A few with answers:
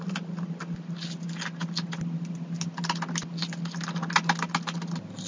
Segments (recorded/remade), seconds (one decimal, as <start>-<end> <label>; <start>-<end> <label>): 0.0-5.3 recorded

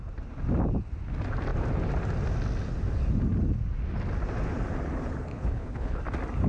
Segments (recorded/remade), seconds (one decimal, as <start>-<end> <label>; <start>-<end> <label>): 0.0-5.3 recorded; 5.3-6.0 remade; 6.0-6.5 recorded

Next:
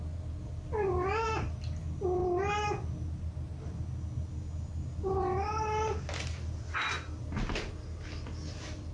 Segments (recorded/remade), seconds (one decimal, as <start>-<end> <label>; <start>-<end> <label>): 0.0-8.9 recorded

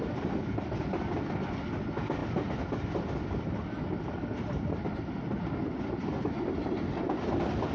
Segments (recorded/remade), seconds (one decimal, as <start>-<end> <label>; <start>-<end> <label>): 0.0-7.7 recorded